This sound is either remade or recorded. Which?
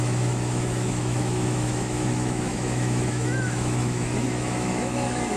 remade